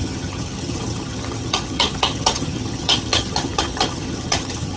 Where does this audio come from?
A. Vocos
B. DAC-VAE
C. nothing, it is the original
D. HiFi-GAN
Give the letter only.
D